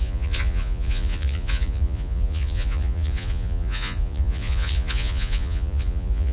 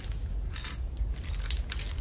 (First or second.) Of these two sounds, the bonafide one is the second